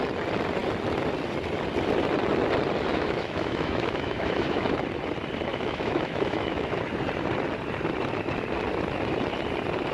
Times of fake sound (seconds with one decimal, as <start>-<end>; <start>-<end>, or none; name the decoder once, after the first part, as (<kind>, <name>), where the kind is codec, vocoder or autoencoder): 2.9-4.7 (autoencoder, DAC-VAE); 5.5-6.8